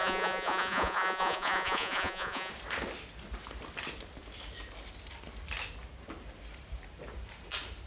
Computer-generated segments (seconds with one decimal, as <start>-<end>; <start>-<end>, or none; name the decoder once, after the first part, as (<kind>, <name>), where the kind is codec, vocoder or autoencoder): 0.0-2.5 (vocoder, Vocos)